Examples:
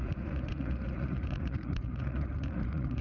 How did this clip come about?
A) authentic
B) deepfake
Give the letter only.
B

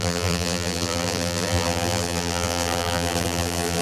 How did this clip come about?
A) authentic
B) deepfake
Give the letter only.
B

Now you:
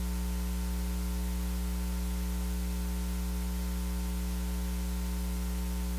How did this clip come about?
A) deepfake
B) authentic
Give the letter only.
B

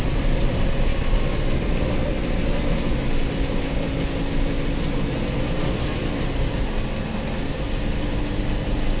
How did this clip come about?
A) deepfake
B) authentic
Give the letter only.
B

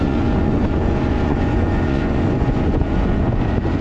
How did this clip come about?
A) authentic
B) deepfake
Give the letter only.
B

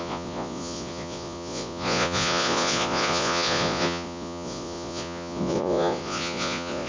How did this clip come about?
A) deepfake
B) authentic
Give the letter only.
A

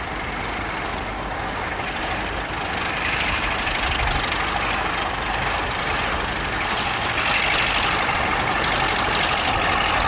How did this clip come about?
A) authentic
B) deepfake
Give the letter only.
A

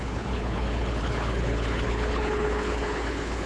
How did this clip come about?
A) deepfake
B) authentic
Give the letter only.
A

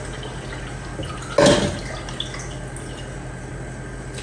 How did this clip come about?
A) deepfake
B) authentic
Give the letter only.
B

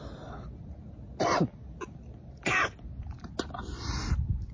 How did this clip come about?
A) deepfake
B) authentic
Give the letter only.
B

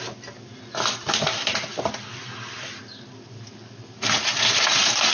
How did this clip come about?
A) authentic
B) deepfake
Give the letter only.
A